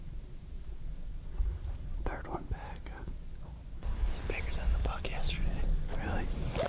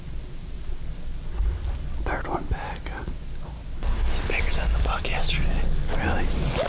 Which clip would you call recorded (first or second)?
second